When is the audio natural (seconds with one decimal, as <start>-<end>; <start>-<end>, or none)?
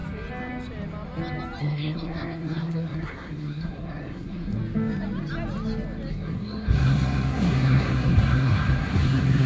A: 0.0-1.6; 4.6-6.1